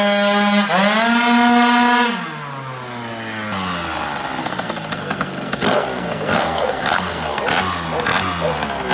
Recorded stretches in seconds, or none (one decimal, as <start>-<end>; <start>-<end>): 0.0-4.4; 7.4-8.9